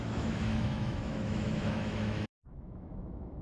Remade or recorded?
remade